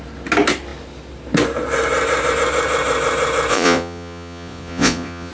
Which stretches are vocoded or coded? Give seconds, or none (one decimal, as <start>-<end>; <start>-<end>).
3.5-5.3